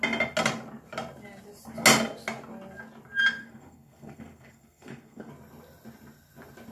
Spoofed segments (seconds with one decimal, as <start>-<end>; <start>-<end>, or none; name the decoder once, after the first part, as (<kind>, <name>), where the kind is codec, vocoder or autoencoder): 3.4-5.3 (codec, SNAC)

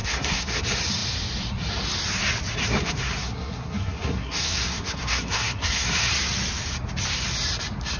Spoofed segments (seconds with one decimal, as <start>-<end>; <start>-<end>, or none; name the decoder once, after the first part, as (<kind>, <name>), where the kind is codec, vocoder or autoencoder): 0.0-0.6 (codec, SNAC); 2.6-6.1

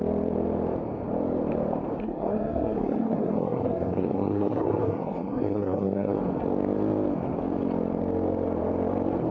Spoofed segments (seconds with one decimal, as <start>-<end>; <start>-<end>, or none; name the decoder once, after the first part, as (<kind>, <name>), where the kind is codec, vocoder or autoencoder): 2.0-6.2 (codec, SNAC)

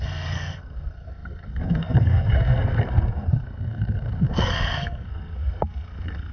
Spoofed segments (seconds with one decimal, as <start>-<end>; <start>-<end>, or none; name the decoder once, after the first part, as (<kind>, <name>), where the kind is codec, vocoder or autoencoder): 0.0-6.3 (codec, SNAC)

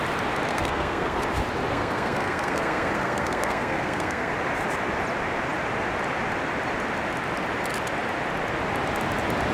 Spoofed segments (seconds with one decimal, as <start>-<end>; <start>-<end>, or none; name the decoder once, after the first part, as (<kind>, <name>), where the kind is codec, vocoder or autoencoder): 0.5-1.2 (codec, SNAC); 1.7-4.3

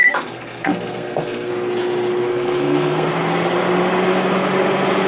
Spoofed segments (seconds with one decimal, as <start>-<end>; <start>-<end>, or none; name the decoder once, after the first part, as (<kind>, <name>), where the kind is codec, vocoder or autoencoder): 0.0-1.5 (codec, SNAC); 2.3-3.1